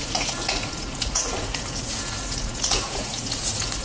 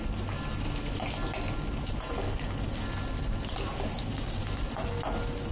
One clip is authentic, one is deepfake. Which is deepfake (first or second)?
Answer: first